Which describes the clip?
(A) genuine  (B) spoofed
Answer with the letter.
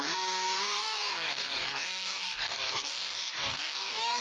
B